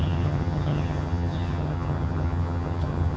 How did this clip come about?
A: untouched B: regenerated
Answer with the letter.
B